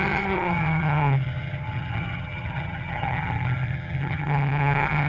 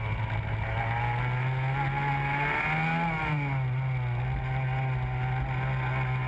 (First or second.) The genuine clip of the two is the second